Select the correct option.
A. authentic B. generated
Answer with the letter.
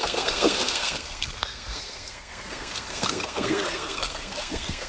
B